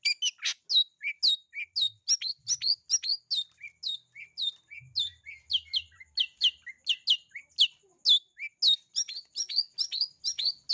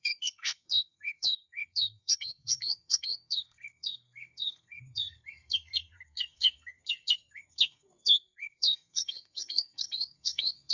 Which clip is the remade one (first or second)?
second